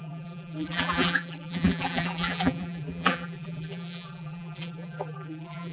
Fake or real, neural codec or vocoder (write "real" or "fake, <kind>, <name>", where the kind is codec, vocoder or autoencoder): fake, vocoder, BigVGAN v2